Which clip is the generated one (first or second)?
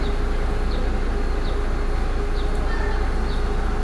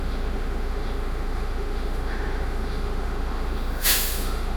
second